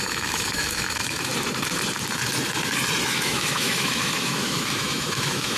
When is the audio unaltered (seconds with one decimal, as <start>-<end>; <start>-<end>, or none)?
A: 1.3-3.1

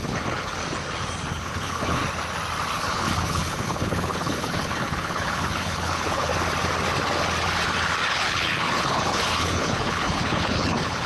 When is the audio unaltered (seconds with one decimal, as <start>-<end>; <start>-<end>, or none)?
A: 0.6-1.3; 2.0-2.8; 6.3-8.1

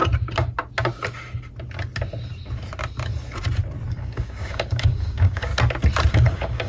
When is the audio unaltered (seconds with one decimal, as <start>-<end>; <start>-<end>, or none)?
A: 0.0-3.9; 5.5-6.1

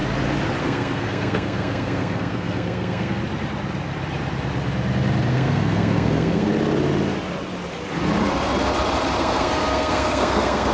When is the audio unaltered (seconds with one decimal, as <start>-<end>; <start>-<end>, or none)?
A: 0.0-0.6; 3.2-5.3; 6.5-9.2